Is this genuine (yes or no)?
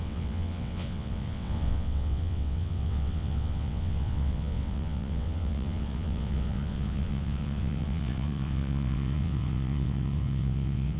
no